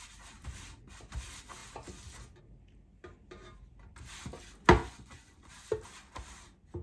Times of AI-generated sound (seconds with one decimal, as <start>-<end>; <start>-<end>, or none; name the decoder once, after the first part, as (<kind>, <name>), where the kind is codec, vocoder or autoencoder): 4.8-5.5 (vocoder, Vocos)